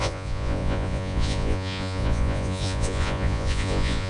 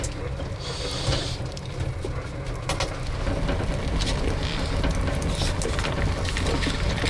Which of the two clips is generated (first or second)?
first